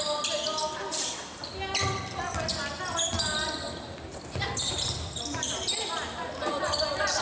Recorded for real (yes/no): yes